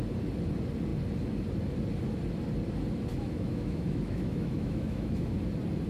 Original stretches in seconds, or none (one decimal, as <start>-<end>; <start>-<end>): 0.0-3.1; 5.3-5.9